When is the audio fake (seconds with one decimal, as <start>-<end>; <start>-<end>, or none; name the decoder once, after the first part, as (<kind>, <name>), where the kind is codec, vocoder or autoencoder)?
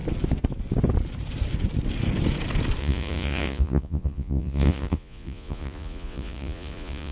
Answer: 2.8-7.1 (vocoder, Vocos)